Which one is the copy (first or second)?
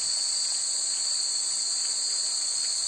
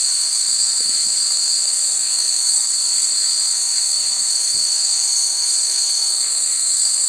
second